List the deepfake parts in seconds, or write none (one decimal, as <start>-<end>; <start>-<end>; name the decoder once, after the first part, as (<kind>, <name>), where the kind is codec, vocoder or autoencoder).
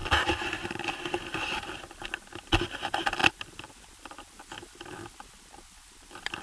0.0-2.3 (vocoder, BigVGAN v2); 3.2-6.4